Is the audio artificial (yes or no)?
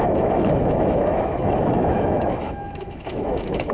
yes